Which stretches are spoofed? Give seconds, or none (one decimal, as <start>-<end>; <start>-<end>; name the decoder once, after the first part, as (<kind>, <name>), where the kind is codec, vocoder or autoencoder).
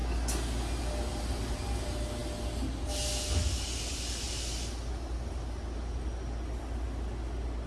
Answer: none